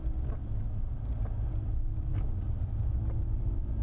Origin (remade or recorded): recorded